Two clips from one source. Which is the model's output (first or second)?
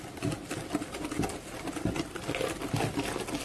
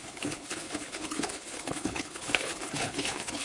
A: second